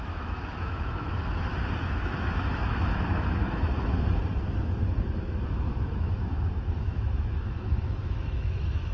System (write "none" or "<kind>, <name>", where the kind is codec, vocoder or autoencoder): autoencoder, DAC-VAE